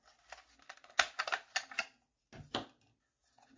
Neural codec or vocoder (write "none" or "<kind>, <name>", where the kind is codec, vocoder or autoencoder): none